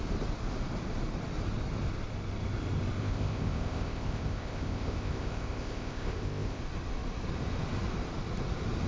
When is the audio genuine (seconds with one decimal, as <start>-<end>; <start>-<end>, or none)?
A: 0.0-3.0; 6.6-8.9